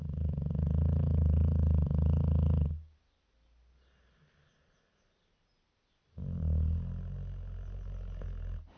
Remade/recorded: recorded